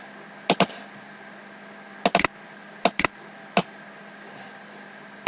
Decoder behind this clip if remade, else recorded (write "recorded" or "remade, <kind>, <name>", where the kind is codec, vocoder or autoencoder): recorded